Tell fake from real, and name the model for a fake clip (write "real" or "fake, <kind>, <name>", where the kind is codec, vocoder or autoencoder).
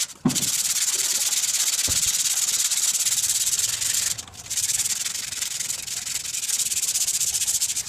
real